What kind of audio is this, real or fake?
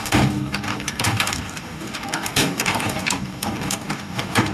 fake